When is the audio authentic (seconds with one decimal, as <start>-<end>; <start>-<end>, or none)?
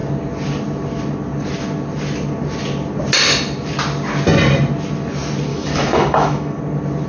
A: 0.0-5.5; 6.6-7.1